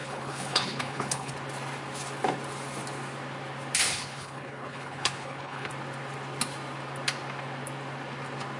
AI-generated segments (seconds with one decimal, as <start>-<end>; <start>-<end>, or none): 0.0-1.3; 3.8-5.7